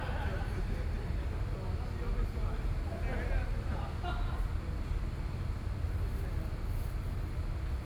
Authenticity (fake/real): real